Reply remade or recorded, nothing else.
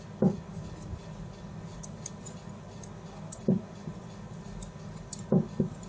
recorded